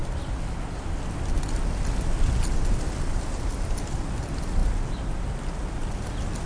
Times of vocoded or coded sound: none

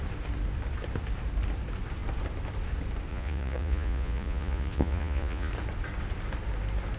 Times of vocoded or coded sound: 3.1-5.5 (vocoder, Vocos)

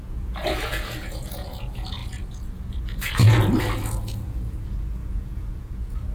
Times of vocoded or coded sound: 0.0-6.1 (vocoder, Vocos)

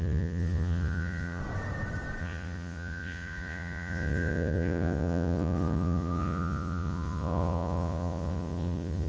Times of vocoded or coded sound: 0.0-1.4 (vocoder, Vocos); 2.2-9.1

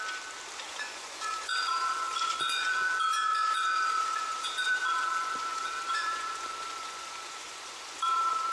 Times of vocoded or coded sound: 0.6-8.5 (vocoder, Vocos)

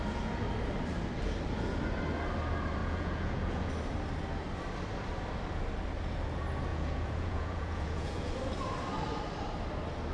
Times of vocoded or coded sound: 2.8-3.7 (vocoder, Vocos); 6.7-8.3

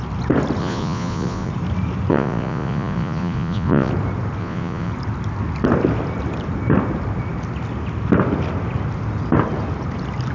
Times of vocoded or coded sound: 0.6-1.5 (vocoder, Vocos); 2.1-3.9; 4.4-4.9